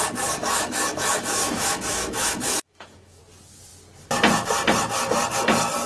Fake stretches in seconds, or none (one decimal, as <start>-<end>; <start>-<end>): 0.4-3.2

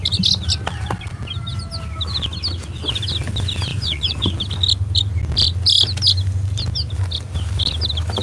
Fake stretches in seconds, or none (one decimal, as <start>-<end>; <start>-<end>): 3.7-4.3

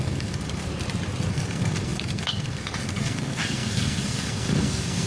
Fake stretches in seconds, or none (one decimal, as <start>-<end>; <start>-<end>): 0.0-0.7; 1.3-5.1